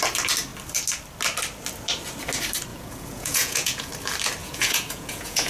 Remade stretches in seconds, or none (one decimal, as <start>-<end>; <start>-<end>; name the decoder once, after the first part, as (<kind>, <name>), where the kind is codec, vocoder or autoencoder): 2.7-3.9 (vocoder, Vocos); 4.4-5.5

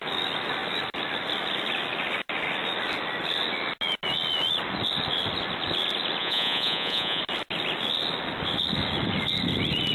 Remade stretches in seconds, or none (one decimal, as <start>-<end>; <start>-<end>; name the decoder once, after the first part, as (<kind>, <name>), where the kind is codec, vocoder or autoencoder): 6.2-7.2 (vocoder, Vocos)

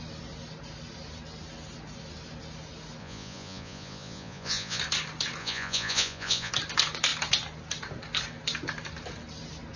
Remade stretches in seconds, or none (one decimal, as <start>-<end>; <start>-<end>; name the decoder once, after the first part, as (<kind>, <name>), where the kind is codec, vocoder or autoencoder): 3.0-4.8 (vocoder, Vocos); 5.4-6.5

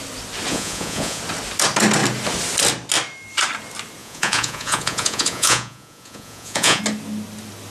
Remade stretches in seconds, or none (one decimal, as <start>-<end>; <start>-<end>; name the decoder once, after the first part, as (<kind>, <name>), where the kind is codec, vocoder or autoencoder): 0.5-1.2 (vocoder, Vocos); 4.0-6.8

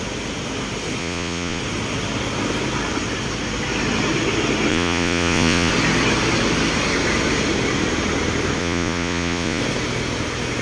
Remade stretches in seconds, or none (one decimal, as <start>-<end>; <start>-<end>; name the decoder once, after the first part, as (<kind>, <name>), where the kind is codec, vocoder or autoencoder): 1.0-1.6 (vocoder, Vocos); 4.7-5.7; 8.6-9.6

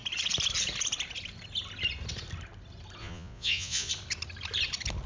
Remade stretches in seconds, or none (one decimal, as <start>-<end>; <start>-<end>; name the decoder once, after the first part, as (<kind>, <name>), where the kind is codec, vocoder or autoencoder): 3.0-3.9 (vocoder, Vocos)